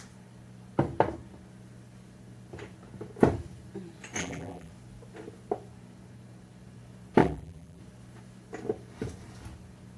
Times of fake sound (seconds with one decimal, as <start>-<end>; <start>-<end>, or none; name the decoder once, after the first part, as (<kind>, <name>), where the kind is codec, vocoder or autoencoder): 4.2-4.7 (vocoder, BigVGAN v2); 7.2-7.8